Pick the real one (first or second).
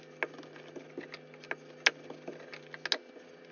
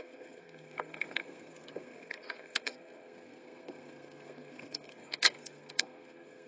first